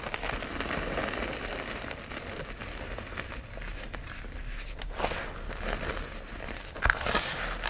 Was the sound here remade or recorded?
recorded